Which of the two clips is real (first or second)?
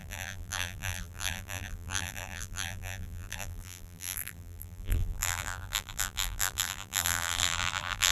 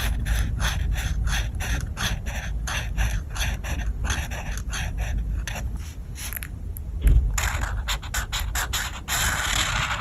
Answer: second